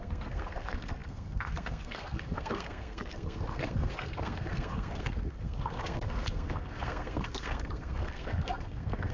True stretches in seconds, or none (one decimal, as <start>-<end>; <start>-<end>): none